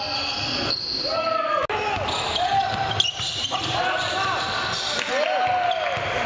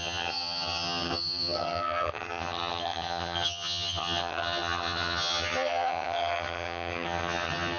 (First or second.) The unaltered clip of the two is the first